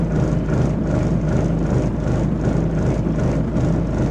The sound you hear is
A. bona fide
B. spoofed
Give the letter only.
A